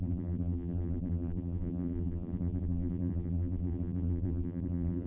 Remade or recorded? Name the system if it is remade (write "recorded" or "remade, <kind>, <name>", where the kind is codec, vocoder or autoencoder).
remade, vocoder, BigVGAN v2